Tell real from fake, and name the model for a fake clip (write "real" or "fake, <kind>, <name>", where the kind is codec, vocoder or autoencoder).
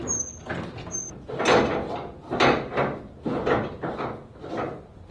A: real